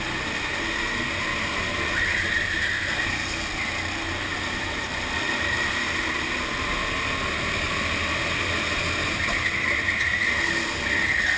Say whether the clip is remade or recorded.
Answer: recorded